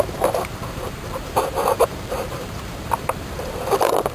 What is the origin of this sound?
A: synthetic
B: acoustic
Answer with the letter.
A